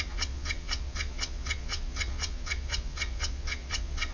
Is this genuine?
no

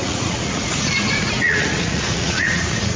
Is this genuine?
no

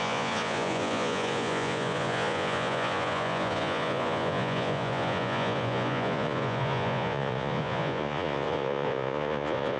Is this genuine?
no